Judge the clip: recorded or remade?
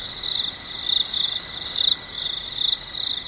recorded